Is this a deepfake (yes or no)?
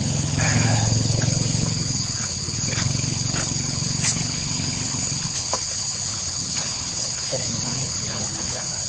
yes